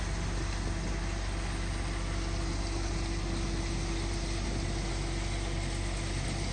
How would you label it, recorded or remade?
recorded